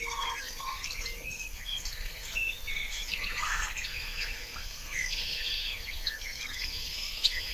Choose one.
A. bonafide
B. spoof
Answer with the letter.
B